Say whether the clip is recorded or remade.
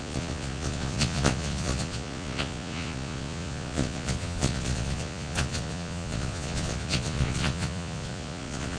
remade